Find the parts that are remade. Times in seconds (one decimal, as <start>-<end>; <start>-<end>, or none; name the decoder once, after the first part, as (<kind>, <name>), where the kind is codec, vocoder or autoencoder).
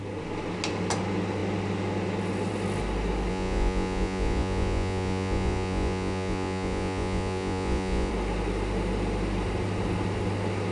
3.3-8.1 (vocoder, Vocos)